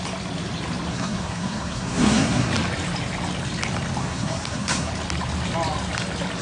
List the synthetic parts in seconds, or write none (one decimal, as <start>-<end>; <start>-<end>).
0.9-2.5; 4.0-4.9